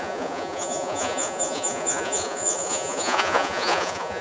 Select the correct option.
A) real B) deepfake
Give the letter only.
B